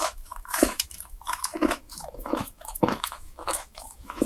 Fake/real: fake